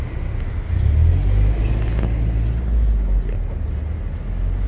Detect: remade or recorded recorded